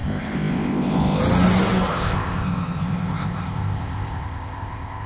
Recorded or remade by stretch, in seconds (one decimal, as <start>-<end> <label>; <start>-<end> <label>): 0.0-1.2 remade; 1.2-1.9 recorded; 1.9-5.1 remade